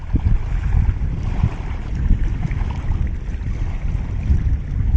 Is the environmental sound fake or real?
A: real